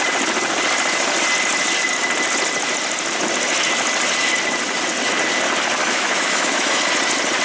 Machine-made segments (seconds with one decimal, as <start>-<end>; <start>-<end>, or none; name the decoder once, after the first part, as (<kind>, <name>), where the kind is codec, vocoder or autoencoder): 5.8-6.8 (autoencoder, DAC-VAE)